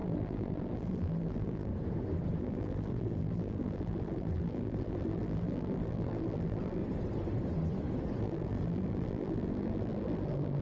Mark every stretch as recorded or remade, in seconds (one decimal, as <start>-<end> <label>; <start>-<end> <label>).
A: 0.0-1.7 remade; 1.7-2.4 recorded; 2.4-6.8 remade; 6.8-8.2 recorded; 8.2-10.6 remade